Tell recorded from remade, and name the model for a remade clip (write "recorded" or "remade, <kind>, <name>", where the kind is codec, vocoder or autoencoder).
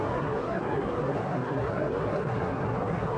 remade, codec, SNAC